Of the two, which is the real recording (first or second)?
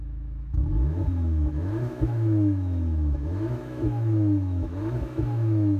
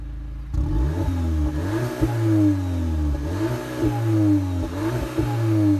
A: second